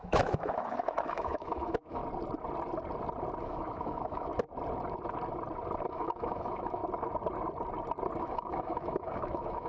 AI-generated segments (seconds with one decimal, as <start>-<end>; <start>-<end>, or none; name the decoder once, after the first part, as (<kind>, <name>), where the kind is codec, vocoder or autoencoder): 0.0-2.0 (autoencoder, DAC-VAE); 3.4-4.3; 5.9-6.8; 8.2-9.7